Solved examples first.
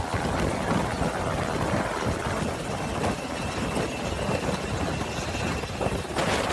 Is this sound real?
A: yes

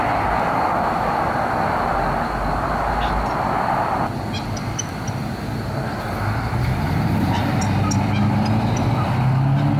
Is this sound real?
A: yes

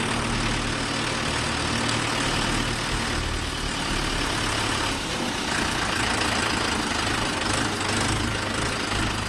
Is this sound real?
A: yes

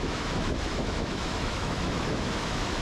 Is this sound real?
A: no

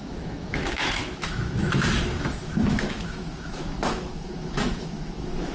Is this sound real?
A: no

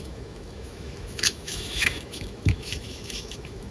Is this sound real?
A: no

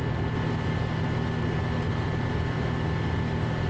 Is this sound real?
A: yes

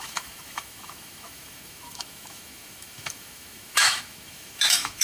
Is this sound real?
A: no